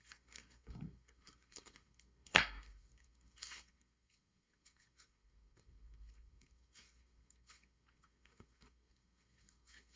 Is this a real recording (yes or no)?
no